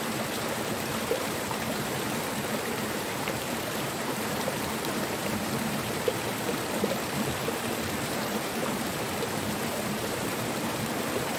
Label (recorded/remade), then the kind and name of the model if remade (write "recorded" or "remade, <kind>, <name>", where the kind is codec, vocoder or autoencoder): remade, vocoder, BigVGAN v2